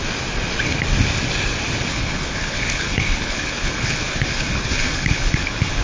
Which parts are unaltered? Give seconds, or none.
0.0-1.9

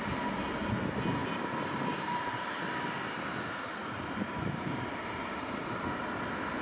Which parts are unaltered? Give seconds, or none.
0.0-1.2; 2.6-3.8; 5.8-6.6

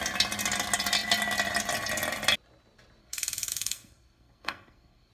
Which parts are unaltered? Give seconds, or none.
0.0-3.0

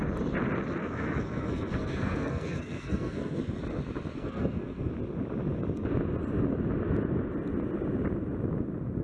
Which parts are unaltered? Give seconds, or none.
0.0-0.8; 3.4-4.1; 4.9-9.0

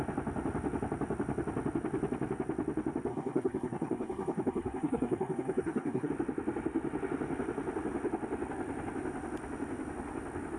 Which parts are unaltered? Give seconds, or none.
0.0-3.1; 6.1-10.6

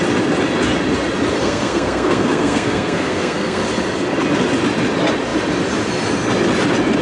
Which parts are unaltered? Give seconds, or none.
0.0-1.4; 3.6-7.0

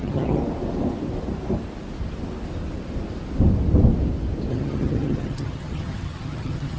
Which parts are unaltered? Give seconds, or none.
0.4-4.5

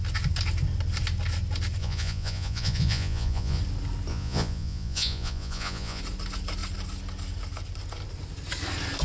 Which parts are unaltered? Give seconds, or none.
0.0-1.8; 3.6-4.1; 6.0-9.0